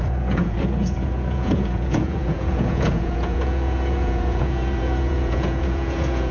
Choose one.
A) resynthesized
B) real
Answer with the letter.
A